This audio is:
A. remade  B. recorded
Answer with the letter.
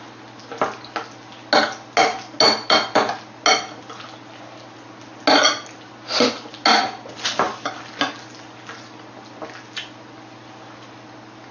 B